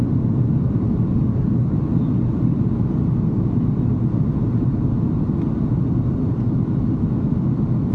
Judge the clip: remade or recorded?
recorded